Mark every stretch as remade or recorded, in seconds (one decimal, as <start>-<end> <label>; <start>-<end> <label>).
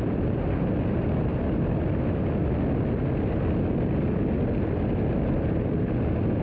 0.0-6.4 recorded